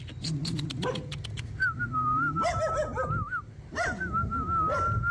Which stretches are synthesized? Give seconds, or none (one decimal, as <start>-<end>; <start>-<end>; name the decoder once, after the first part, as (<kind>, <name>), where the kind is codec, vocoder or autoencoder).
none